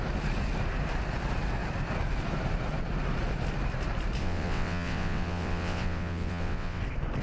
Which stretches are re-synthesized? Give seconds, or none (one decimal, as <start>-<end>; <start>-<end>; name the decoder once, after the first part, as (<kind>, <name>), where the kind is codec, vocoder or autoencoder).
4.2-6.8 (vocoder, WaveNeXt)